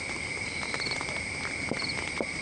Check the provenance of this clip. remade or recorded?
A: recorded